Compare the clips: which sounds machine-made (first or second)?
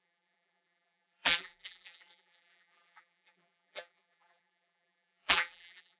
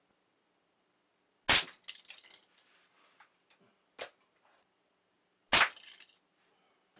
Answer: first